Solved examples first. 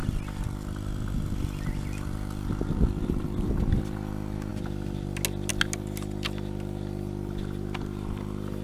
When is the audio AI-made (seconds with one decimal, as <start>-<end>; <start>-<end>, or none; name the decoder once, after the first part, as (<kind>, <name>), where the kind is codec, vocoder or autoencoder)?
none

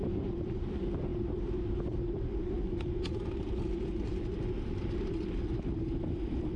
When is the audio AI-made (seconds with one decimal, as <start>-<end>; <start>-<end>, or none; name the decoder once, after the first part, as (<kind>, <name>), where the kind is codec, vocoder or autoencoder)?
0.0-1.1 (vocoder, BigVGAN v2); 3.5-6.6

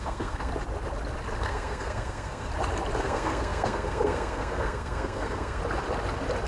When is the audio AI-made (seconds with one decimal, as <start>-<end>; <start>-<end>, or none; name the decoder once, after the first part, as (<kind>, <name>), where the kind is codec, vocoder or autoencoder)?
0.0-0.5 (codec, SNAC); 1.4-2.5; 3.0-5.6